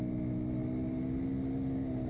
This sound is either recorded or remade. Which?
recorded